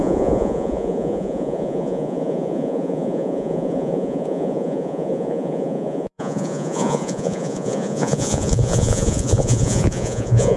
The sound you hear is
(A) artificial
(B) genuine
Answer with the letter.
A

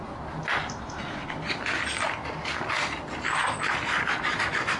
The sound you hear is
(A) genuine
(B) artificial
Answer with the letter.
A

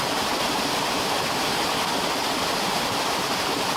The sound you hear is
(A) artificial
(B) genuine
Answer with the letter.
A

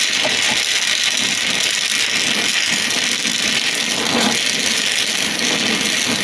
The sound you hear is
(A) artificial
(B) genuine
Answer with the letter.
B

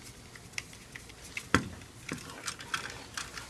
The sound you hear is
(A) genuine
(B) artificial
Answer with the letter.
A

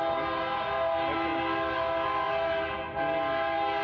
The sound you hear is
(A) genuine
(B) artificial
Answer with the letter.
A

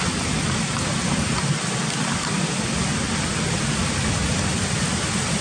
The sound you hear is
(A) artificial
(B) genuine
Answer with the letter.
B